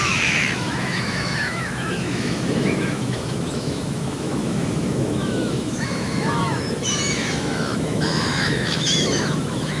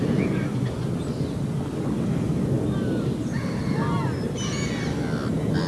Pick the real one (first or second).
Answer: second